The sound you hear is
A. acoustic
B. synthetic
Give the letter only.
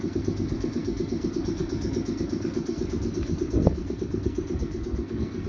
B